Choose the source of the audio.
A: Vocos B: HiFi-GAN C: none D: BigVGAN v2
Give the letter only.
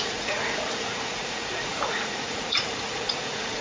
A